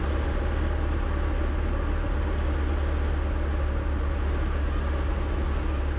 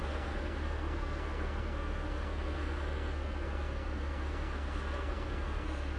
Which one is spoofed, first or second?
second